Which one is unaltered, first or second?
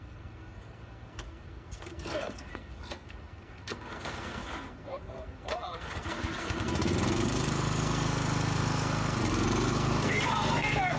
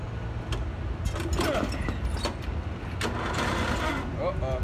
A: second